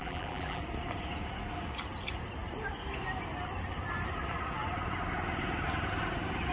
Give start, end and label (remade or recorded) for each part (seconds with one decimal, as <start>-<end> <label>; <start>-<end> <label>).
0.0-0.6 remade; 0.6-6.5 recorded